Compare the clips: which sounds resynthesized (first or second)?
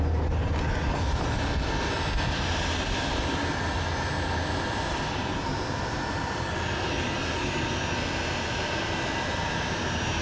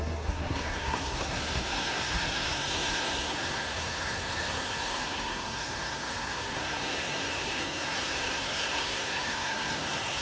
second